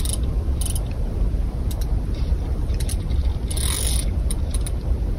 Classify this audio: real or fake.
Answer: real